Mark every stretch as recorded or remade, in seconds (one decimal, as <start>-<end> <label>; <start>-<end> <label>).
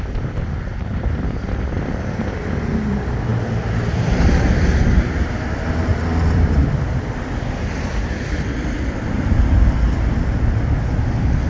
0.0-5.9 recorded; 5.9-9.3 remade; 9.3-11.5 recorded